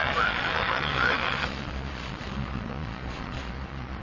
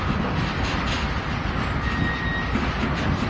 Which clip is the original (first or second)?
second